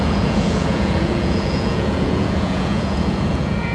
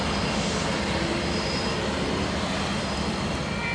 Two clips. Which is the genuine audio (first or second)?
second